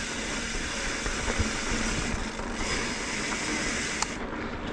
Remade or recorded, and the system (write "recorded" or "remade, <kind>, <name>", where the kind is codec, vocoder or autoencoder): recorded